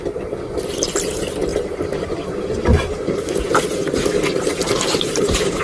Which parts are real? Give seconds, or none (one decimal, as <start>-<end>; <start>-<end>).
0.0-2.7; 3.3-4.6